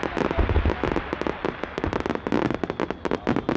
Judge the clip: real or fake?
real